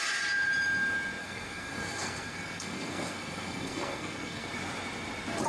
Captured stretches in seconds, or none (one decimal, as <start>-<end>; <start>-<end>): 0.0-1.2; 4.5-5.5